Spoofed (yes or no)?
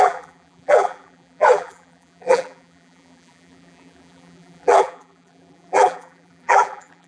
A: yes